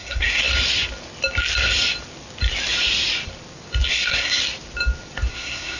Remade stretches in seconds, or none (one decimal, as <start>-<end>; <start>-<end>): 0.0-0.4; 3.9-4.4; 5.3-5.8